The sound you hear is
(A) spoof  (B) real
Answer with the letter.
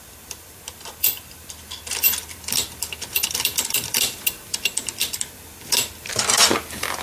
A